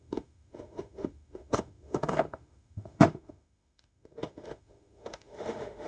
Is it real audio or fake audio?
fake